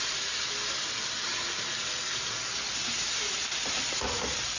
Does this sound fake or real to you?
real